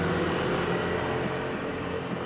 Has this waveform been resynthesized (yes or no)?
no